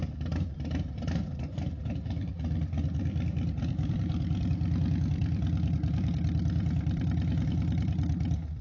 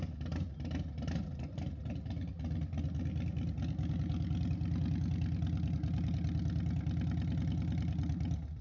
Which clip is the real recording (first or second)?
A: second